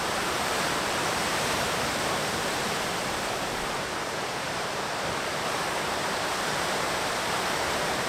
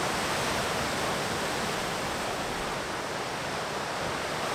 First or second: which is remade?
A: first